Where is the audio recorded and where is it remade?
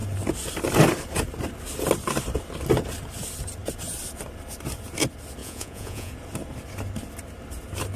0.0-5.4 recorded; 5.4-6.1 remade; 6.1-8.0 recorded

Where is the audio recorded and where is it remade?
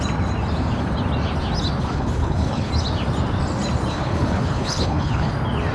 0.0-1.8 recorded; 1.8-2.7 remade; 2.7-3.9 recorded; 3.9-5.3 remade; 5.3-5.7 recorded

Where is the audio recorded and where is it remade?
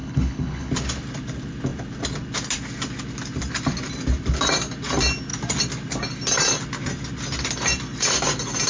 0.0-0.7 remade; 0.7-8.7 recorded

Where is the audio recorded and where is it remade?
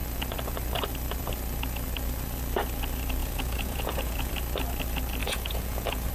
0.0-3.2 recorded; 3.2-4.3 remade; 4.3-5.2 recorded; 5.2-6.1 remade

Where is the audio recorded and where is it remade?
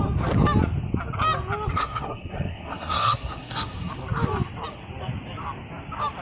0.0-1.7 recorded; 1.7-3.9 remade; 3.9-6.2 recorded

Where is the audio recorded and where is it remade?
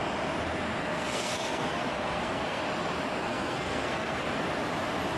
0.0-0.8 recorded; 0.8-2.6 remade; 2.6-3.2 recorded; 3.2-4.2 remade; 4.2-5.2 recorded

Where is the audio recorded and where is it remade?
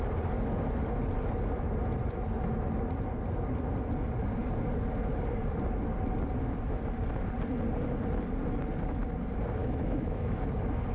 0.0-9.6 recorded; 9.6-10.5 remade; 10.5-10.9 recorded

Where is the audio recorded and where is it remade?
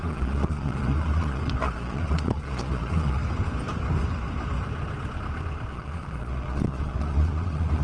0.0-3.2 remade; 3.2-5.7 recorded; 5.7-7.8 remade